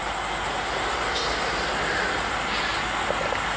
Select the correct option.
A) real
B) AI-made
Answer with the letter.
A